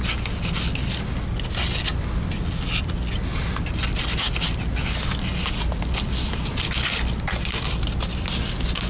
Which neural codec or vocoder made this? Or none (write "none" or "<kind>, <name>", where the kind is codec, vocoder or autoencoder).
none